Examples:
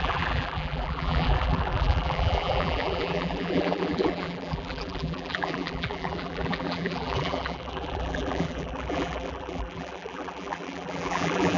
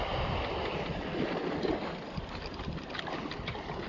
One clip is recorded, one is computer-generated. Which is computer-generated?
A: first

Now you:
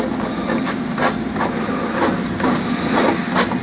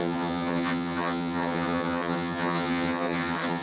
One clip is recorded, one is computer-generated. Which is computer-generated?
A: second